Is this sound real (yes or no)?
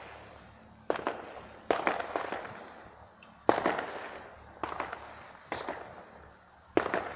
yes